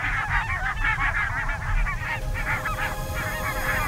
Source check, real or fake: real